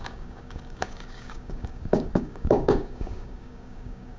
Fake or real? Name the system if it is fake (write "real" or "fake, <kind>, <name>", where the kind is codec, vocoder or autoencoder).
fake, codec, DAC